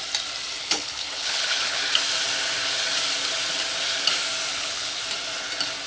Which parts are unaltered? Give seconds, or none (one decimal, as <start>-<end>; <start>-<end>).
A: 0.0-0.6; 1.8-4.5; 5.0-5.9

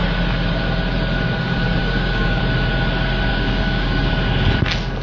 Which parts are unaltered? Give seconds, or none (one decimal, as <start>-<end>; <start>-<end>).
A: 0.0-1.8; 2.4-3.3; 4.1-5.0

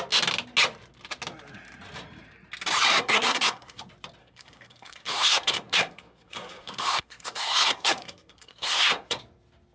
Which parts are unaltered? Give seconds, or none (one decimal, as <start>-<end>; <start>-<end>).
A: 0.0-3.0; 3.8-4.2; 9.2-9.7

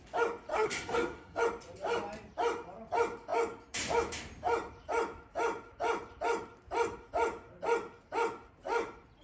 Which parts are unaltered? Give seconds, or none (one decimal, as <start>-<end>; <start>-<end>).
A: 0.0-0.5; 1.4-9.2